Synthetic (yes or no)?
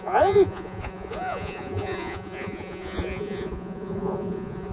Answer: yes